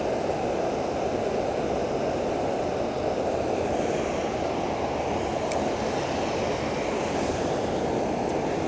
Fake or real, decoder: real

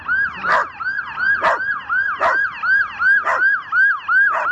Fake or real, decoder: real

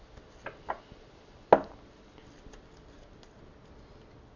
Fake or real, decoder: real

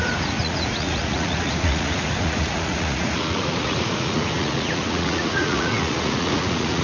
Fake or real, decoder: fake, vocoder, Vocos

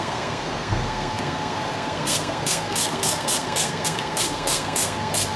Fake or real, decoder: fake, codec, SNAC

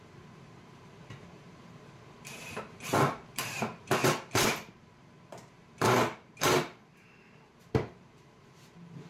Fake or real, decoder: fake, vocoder, BigVGAN v2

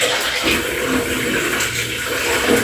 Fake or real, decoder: real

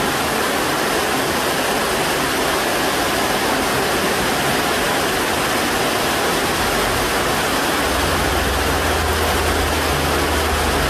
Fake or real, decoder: real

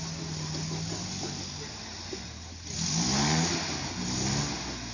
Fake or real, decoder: real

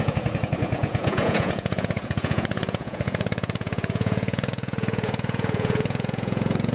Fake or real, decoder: fake, vocoder, Vocos